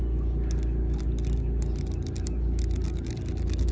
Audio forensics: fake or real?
real